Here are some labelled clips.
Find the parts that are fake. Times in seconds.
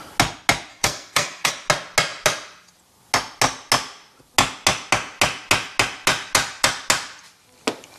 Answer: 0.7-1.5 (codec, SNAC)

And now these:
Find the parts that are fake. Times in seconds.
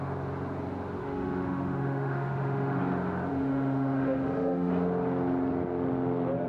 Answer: 1.0-2.8 (autoencoder, DAC-VAE); 3.3-4.7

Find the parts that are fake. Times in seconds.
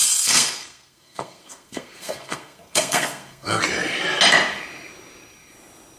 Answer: 0.0-3.6 (codec, SNAC)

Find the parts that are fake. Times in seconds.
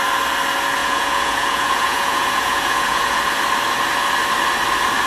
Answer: 0.8-3.2 (vocoder, Vocos)